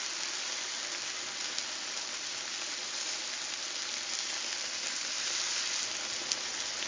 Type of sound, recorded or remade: recorded